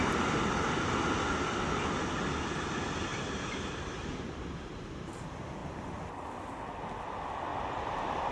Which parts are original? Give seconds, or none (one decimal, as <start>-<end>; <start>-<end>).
0.0-3.1; 4.4-7.5